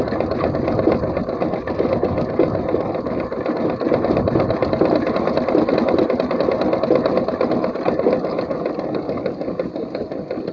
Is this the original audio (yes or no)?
yes